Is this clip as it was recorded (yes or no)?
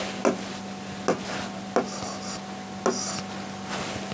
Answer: yes